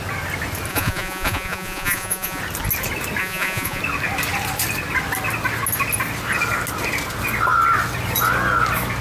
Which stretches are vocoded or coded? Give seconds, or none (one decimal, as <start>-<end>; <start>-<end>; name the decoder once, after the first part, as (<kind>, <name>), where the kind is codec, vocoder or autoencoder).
0.7-2.4 (vocoder, Vocos); 3.2-3.8